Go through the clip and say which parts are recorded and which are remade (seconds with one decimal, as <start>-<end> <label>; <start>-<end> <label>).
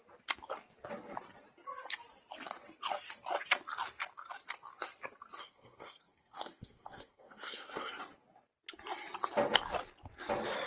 0.0-5.4 recorded; 5.4-8.0 remade; 8.0-10.7 recorded